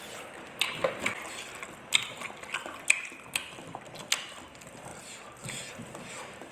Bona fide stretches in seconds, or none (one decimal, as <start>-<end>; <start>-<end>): 0.0-6.5

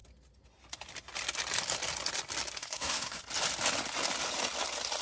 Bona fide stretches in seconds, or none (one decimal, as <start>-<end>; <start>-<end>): 0.0-2.6; 3.2-5.0

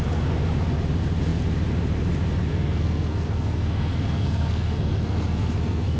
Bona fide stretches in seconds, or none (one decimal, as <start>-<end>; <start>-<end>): 0.0-2.5

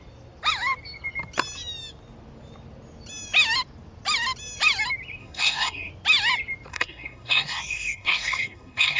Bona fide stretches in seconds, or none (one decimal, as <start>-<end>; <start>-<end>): 0.0-5.2; 5.9-6.7